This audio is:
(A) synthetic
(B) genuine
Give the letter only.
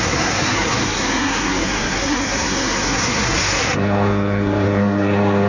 A